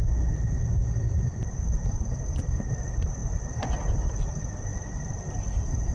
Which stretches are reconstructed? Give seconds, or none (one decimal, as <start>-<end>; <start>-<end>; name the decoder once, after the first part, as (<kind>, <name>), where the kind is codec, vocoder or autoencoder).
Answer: 3.2-4.2 (vocoder, BigVGAN v2)